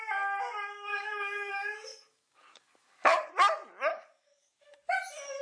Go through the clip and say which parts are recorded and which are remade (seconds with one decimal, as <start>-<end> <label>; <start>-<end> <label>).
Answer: 0.0-0.9 recorded; 0.9-1.5 remade; 1.5-1.9 recorded; 1.9-3.3 remade; 3.3-3.9 recorded; 3.9-4.6 remade; 4.6-5.4 recorded